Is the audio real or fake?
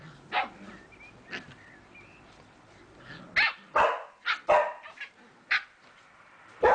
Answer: real